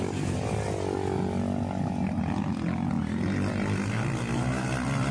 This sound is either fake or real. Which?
real